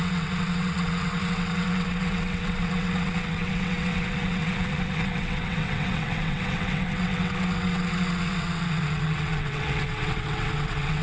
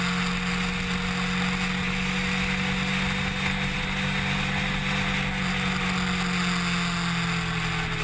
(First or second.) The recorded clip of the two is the second